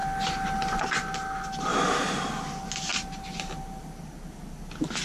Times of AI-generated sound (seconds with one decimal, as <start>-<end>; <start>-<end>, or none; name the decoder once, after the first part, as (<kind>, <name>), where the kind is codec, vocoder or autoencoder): none